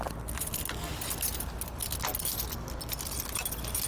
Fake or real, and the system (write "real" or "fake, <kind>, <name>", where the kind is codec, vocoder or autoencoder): real